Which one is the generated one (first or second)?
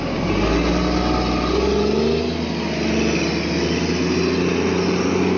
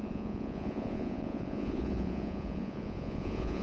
second